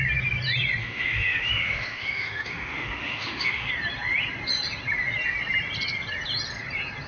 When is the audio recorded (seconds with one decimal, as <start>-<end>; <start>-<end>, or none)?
0.0-0.8; 3.7-7.1